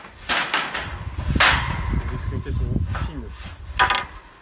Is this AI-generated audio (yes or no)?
no